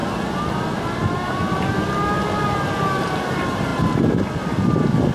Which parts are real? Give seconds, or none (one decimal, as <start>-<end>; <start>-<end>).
0.0-5.1